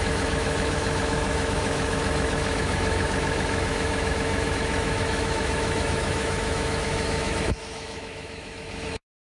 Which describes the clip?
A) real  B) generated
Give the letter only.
B